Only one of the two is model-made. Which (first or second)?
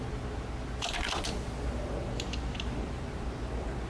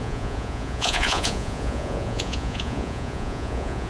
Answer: second